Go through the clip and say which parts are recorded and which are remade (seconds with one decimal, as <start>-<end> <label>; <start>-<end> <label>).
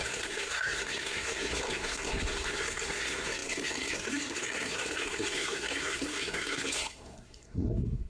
0.0-8.1 remade